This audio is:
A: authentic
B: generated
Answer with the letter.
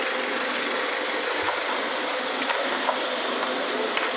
A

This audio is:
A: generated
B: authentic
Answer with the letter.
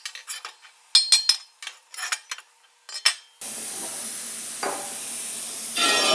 B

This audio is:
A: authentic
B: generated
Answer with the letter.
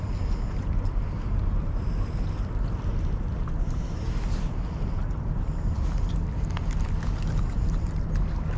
B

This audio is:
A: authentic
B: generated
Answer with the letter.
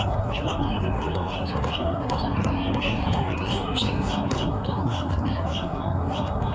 B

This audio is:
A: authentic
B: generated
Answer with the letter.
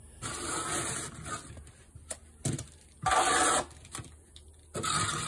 A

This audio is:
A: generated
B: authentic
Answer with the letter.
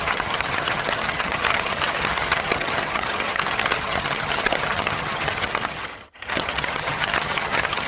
A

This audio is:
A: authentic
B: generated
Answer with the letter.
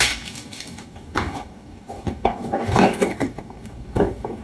B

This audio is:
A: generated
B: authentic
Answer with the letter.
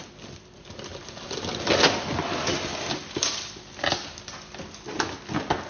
B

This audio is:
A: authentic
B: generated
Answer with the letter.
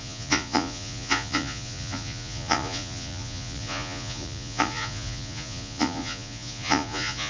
B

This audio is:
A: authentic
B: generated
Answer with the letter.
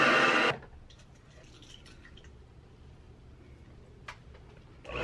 A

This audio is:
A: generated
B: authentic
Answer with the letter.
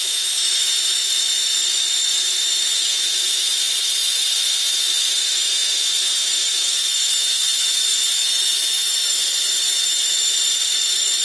A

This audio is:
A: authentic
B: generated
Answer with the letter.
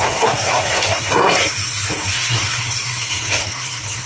B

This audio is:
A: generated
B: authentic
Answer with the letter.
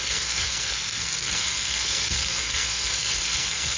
A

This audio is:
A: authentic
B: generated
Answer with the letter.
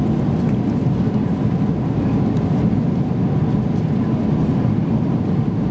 A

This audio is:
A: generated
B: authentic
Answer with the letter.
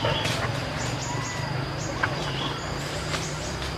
A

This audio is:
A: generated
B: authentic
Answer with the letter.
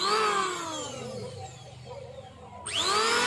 B